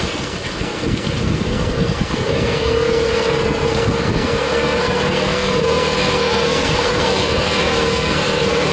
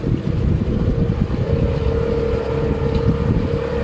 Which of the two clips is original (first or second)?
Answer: second